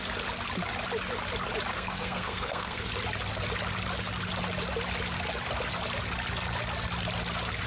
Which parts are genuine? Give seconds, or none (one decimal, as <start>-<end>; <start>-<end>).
0.0-1.7; 2.9-7.7